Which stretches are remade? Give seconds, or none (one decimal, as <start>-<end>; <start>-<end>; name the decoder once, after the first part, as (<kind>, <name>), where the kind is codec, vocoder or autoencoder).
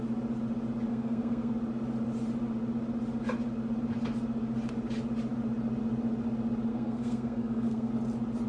0.9-1.5 (codec, SNAC); 6.7-7.9